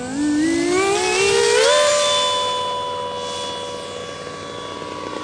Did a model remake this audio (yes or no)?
no